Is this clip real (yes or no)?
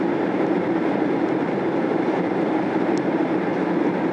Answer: no